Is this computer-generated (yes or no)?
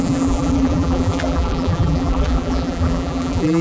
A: yes